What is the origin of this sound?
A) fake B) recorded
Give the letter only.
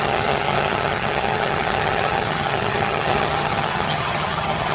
A